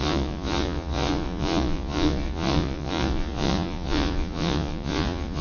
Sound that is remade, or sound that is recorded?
remade